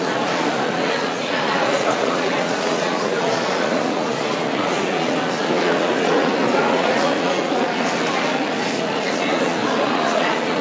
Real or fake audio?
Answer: fake